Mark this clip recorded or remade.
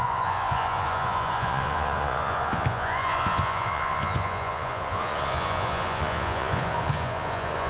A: remade